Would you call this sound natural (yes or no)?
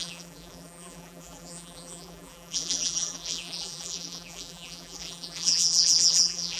no